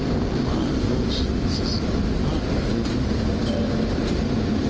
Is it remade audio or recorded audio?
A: recorded